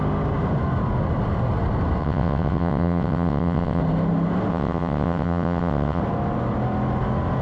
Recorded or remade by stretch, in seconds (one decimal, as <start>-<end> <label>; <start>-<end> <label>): 0.0-2.0 recorded; 2.0-3.8 remade; 3.8-4.5 recorded; 4.5-6.0 remade; 6.0-7.4 recorded